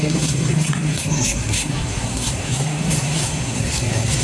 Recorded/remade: remade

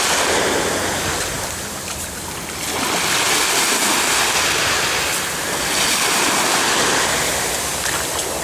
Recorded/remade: recorded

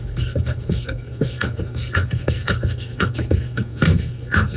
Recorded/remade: remade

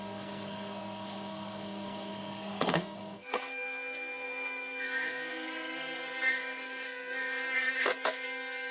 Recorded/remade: remade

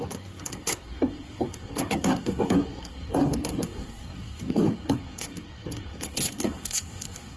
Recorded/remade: remade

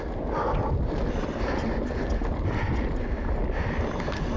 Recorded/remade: recorded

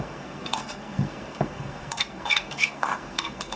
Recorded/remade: remade